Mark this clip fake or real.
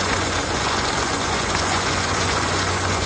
fake